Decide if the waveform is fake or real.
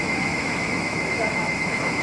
fake